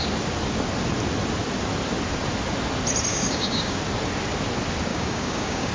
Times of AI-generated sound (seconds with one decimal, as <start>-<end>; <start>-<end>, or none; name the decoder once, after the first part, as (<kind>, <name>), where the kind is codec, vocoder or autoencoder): 3.1-3.8 (codec, DAC); 4.9-5.7